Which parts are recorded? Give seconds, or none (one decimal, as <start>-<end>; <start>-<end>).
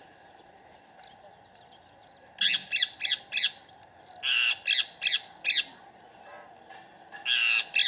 0.0-7.9